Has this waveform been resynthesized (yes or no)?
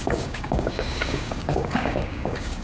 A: yes